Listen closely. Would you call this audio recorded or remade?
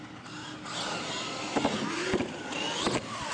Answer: recorded